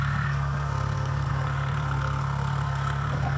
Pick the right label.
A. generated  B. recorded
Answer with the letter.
A